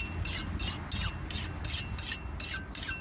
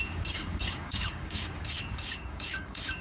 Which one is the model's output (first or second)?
second